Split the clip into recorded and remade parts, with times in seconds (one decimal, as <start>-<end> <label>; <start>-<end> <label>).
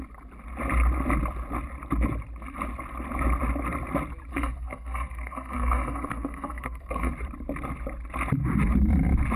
0.0-4.3 recorded; 4.3-7.1 remade; 7.1-9.4 recorded